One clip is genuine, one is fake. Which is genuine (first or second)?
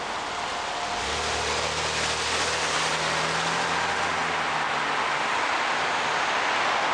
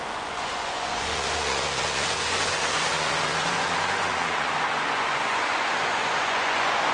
first